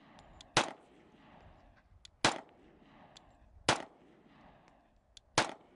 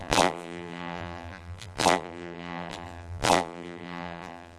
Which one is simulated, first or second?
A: second